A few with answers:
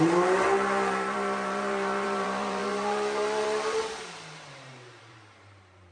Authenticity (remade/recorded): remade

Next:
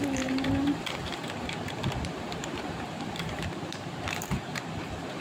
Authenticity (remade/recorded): remade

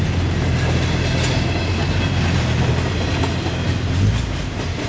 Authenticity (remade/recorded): recorded